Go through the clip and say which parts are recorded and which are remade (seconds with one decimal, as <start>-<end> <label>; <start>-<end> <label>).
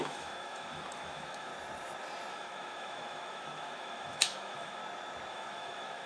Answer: 0.0-1.5 remade; 1.5-2.3 recorded; 2.3-4.8 remade; 4.8-5.3 recorded; 5.3-6.1 remade